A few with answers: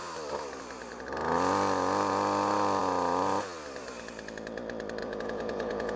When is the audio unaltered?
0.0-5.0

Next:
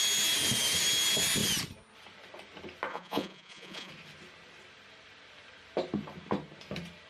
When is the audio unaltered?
0.0-2.9; 3.9-7.1

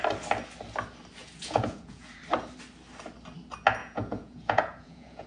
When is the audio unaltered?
0.0-1.2; 2.2-3.8

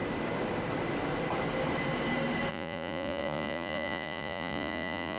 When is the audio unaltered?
0.0-2.5

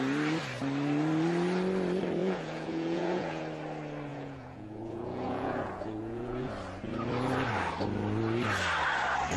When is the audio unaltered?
0.0-2.2; 3.4-4.1; 6.5-9.4

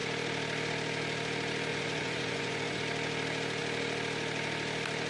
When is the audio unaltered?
0.0-1.7; 2.8-5.1

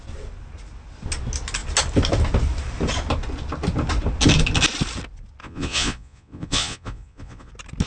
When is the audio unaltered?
0.0-5.4; 7.5-7.9